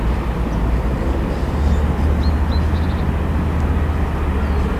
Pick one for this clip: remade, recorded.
recorded